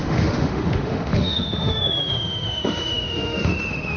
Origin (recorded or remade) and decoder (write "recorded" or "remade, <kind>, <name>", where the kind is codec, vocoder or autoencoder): remade, autoencoder, DAC-VAE